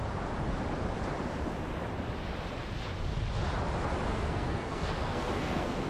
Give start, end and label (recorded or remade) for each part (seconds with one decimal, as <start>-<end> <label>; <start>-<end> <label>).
0.0-4.1 recorded; 4.1-5.9 remade